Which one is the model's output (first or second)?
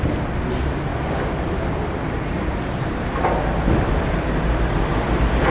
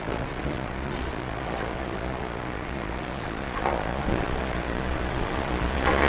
second